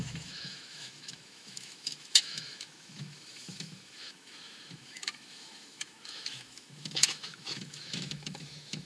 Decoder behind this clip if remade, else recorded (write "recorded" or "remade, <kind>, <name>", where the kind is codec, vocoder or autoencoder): remade, autoencoder, DAC-VAE